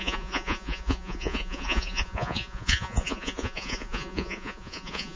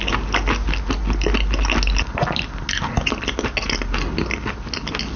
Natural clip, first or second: second